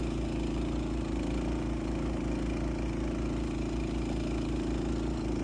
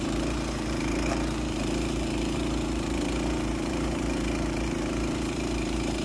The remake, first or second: second